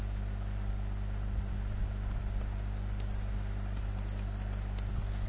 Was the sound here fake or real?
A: real